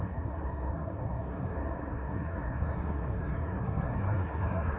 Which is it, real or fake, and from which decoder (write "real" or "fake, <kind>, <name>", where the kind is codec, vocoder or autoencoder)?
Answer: fake, codec, SNAC